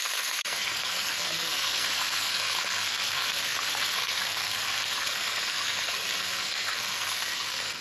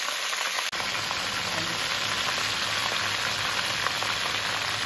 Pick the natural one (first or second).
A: second